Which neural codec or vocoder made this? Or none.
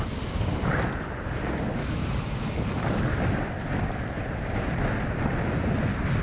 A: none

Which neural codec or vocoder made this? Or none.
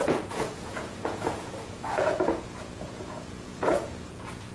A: vocoder, Vocos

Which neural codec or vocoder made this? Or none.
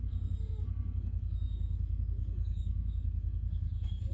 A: codec, SNAC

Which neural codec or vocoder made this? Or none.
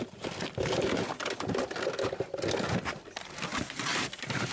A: none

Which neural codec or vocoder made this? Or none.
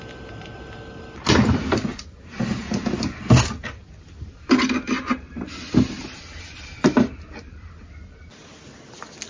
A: none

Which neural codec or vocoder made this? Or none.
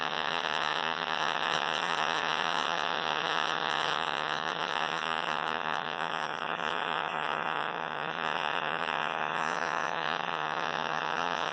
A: vocoder, HiFi-GAN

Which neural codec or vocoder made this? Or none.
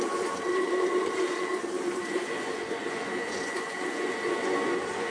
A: vocoder, Vocos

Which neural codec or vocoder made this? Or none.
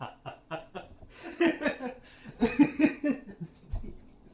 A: vocoder, Vocos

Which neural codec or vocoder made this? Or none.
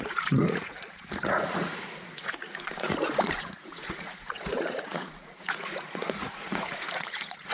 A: vocoder, Vocos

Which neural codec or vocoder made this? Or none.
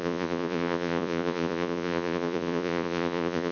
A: vocoder, Vocos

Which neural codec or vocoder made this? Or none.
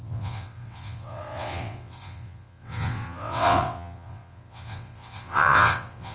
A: vocoder, WaveNeXt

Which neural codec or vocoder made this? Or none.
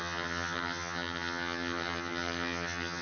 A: vocoder, HiFi-GAN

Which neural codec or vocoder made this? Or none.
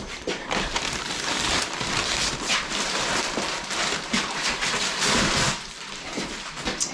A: vocoder, BigVGAN v2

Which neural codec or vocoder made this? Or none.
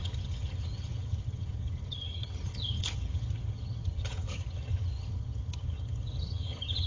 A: vocoder, HiFi-GAN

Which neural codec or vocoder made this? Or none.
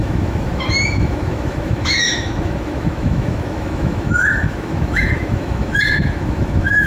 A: autoencoder, DAC-VAE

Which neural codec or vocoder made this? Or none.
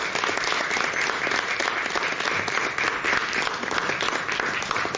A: none